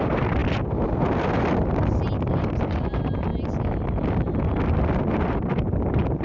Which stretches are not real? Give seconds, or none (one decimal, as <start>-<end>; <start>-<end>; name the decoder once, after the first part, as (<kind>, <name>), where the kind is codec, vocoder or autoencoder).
0.0-0.4 (vocoder, BigVGAN v2); 2.3-3.3; 5.2-6.2

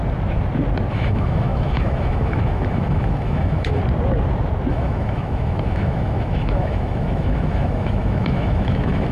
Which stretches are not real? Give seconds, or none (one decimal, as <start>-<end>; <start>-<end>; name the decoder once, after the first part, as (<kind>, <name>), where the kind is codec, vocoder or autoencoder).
0.9-3.8 (autoencoder, DAC-VAE); 4.7-9.1

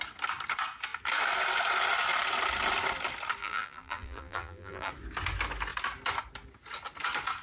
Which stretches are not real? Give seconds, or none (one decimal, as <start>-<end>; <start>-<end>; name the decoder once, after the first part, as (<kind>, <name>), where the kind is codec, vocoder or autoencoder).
3.4-4.9 (vocoder, BigVGAN v2)

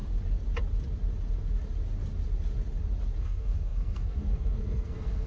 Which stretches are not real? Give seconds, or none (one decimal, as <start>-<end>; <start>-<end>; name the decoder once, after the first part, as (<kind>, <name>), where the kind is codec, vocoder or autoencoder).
3.2-5.3 (codec, SNAC)

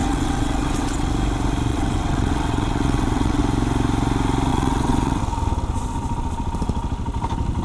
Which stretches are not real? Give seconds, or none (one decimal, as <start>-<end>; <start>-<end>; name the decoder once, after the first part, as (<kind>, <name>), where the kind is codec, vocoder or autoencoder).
0.0-1.1 (vocoder, WaveNeXt); 1.7-3.4; 4.5-5.2

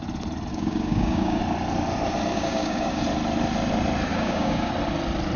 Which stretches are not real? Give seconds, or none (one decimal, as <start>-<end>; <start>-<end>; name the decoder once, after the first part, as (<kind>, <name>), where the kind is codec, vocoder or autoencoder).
0.5-1.4 (codec, DAC); 2.3-3.0; 4.1-4.7

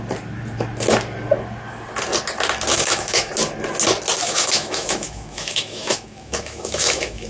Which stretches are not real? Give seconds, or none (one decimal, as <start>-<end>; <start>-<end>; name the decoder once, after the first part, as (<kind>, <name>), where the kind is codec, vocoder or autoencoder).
2.7-3.3 (autoencoder, DAC-VAE); 4.2-7.3